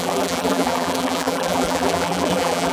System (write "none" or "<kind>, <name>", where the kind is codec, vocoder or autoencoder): vocoder, BigVGAN v2